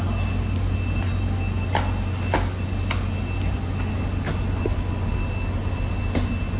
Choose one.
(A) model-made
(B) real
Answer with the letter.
B